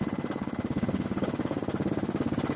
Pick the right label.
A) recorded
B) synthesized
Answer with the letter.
A